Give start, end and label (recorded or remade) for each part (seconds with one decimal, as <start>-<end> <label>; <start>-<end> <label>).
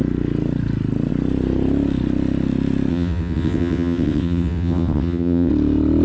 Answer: 0.0-2.9 recorded; 2.9-5.5 remade; 5.5-6.0 recorded